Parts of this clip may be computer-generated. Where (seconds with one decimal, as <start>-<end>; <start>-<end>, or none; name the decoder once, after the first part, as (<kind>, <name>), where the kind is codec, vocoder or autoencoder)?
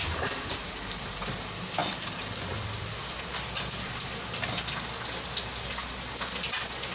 0.0-1.2 (vocoder, BigVGAN v2)